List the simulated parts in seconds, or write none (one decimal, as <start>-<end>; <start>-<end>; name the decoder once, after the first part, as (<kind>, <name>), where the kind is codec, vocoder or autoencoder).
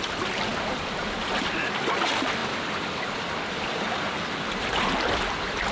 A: 0.5-1.5 (vocoder, BigVGAN v2); 2.4-5.7